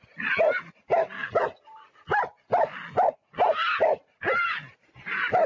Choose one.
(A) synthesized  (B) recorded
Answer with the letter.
B